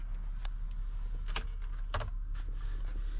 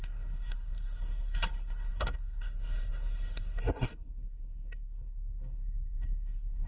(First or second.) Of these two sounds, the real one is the first